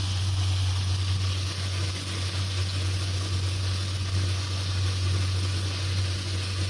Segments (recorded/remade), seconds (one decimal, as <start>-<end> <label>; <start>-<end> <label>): 0.0-6.7 remade